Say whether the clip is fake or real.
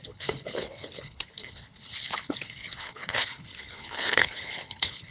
fake